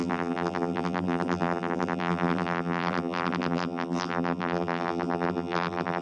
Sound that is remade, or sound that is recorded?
remade